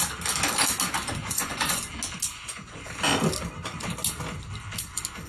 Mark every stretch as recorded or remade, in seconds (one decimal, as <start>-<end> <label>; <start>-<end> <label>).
0.0-1.2 recorded; 1.2-1.8 remade; 1.8-2.3 recorded; 2.3-2.9 remade; 2.9-5.3 recorded